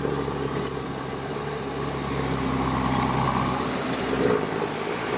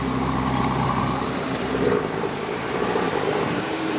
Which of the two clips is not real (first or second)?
second